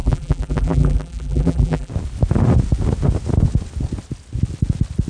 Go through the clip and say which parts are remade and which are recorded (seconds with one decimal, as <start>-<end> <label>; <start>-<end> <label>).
0.0-1.9 remade; 1.9-5.1 recorded

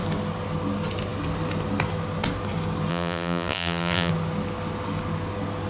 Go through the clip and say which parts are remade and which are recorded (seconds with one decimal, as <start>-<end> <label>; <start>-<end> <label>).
0.0-2.9 recorded; 2.9-4.1 remade; 4.1-5.7 recorded